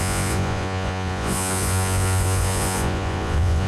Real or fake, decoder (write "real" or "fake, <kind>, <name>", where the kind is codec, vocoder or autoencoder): fake, vocoder, Vocos